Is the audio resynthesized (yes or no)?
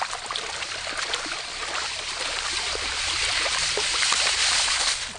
no